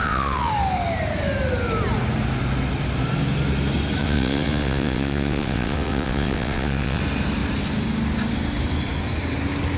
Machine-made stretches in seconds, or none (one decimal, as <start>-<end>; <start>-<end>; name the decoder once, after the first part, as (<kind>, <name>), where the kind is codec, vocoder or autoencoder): 0.0-0.5 (vocoder, WaveNeXt); 4.0-7.0